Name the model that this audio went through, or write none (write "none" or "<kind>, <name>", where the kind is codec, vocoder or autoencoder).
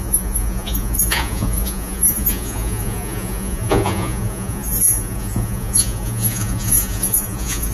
vocoder, Vocos